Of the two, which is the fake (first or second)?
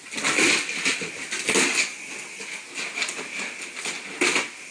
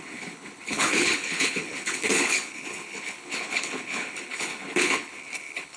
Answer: second